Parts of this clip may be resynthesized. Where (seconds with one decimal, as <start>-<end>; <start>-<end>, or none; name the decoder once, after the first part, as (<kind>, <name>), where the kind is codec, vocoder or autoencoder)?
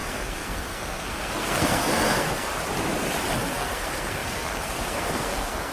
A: 0.0-2.5 (codec, SNAC); 3.4-5.7